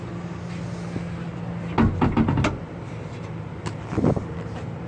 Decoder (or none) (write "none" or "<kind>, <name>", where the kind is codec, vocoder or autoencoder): none